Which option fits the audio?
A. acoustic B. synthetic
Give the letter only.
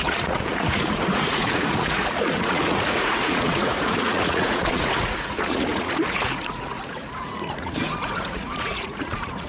B